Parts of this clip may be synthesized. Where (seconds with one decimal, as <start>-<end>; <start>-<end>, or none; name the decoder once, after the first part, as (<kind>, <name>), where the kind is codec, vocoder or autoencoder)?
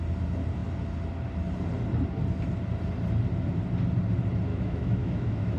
4.5-5.6 (autoencoder, DAC-VAE)